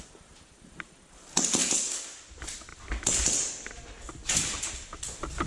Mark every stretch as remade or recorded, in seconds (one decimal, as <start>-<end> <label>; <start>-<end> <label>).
0.0-5.5 recorded